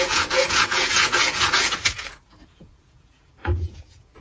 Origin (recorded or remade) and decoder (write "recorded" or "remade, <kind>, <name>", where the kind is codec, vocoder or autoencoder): remade, vocoder, Vocos